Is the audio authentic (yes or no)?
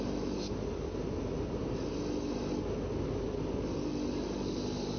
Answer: yes